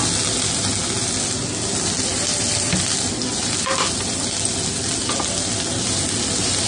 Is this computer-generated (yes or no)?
no